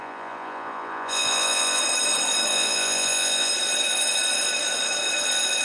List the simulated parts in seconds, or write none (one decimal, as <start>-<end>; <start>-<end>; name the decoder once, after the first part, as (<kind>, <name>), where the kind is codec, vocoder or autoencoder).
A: 0.0-1.8 (vocoder, Vocos); 2.5-3.5